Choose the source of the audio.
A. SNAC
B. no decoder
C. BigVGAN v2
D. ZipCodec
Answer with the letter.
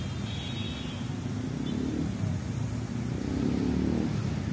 B